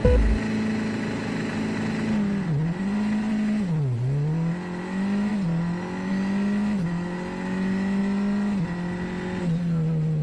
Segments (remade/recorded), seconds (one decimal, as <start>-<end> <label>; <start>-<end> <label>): 0.0-10.2 recorded